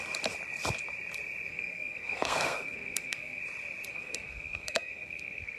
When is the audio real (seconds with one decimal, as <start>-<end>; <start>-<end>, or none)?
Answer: 0.0-1.5; 3.4-3.9

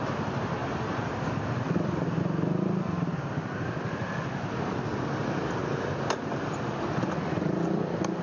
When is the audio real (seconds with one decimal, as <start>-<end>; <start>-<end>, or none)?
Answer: 0.0-0.6; 2.2-8.2

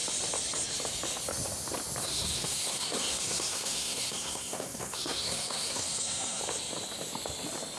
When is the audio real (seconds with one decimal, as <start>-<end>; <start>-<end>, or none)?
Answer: 0.0-2.0; 6.4-7.8